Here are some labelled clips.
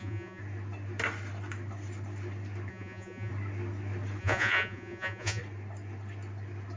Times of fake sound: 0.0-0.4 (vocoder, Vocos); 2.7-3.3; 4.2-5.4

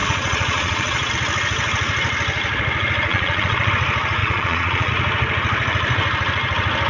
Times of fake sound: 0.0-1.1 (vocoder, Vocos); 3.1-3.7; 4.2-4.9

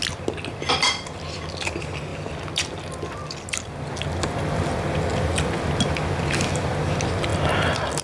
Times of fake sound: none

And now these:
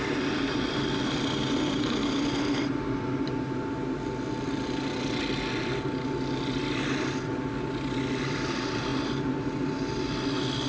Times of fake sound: none

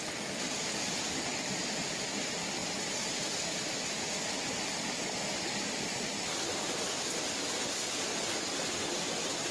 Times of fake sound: 2.6-6.0 (vocoder, BigVGAN v2)

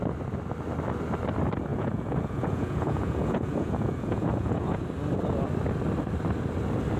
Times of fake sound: 1.7-4.8 (vocoder, Vocos)

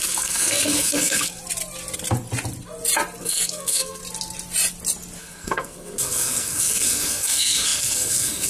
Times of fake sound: 0.0-1.4 (codec, SNAC); 3.2-4.0; 5.2-8.5